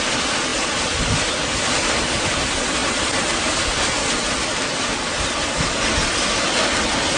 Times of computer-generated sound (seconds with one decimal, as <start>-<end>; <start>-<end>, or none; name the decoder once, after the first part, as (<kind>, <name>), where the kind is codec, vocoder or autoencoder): none